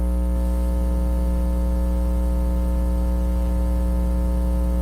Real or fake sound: real